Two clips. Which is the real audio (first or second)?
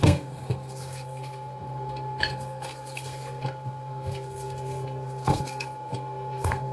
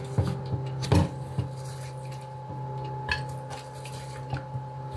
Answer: second